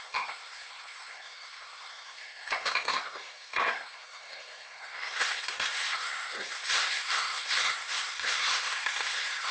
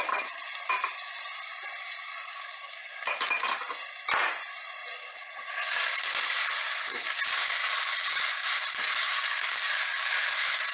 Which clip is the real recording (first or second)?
second